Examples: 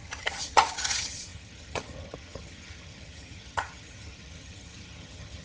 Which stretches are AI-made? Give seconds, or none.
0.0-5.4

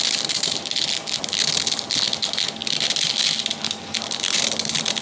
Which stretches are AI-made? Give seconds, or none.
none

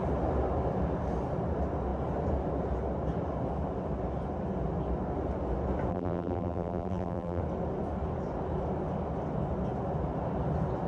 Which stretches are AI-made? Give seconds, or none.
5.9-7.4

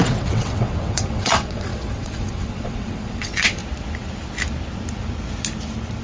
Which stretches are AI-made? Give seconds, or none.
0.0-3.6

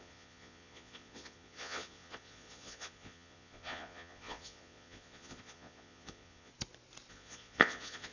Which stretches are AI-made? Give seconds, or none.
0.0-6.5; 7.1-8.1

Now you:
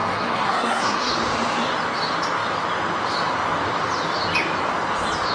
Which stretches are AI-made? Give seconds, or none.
0.0-1.1